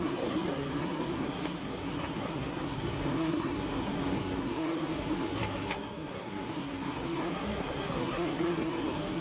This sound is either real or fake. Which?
fake